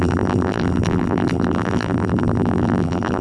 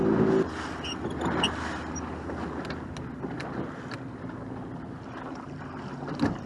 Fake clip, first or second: first